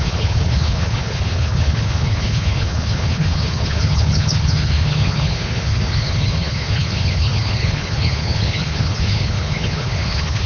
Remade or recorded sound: remade